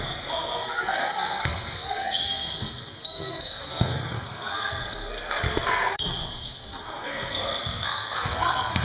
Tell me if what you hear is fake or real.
fake